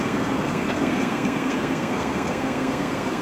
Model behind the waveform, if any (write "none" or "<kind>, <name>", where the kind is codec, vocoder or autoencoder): codec, SNAC